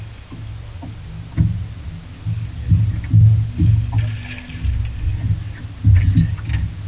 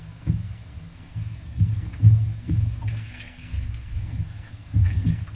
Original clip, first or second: first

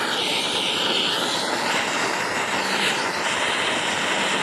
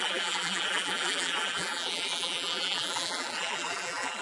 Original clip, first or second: first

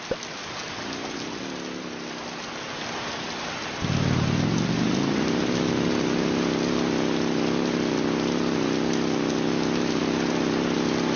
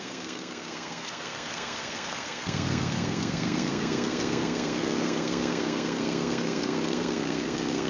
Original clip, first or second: first